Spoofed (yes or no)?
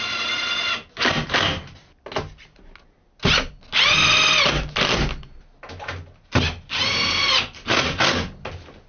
no